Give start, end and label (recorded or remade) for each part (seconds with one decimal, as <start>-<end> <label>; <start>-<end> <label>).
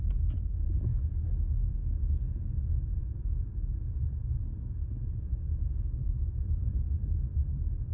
0.0-0.9 remade; 0.9-1.6 recorded; 1.6-7.9 remade